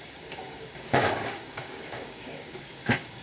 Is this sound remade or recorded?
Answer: remade